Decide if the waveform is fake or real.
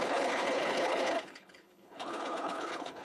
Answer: fake